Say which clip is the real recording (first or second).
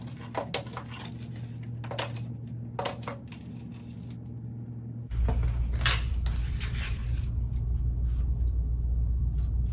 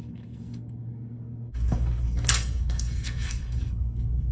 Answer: first